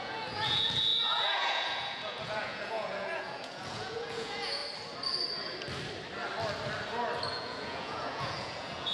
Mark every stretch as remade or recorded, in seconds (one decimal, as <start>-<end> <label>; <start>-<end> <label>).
0.0-4.6 remade; 4.6-7.3 recorded; 7.3-8.9 remade